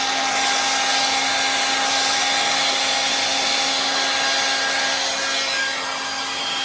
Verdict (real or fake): real